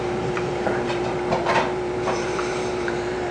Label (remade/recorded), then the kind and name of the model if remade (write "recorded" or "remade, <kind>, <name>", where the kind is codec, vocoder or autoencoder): remade, vocoder, BigVGAN v2